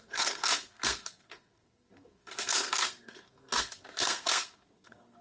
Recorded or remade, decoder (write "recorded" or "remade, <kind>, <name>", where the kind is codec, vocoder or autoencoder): remade, codec, SNAC